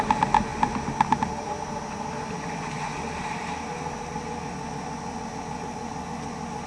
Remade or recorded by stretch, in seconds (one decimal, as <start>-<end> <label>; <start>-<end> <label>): 0.0-6.7 recorded